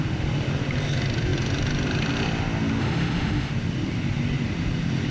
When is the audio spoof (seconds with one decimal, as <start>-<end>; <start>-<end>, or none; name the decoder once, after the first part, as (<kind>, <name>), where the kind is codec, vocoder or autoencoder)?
2.8-3.5 (autoencoder, DAC-VAE)